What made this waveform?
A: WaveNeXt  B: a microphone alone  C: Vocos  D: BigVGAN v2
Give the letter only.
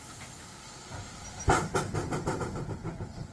B